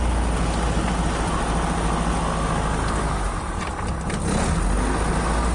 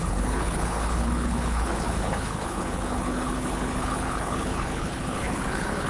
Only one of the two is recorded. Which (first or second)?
first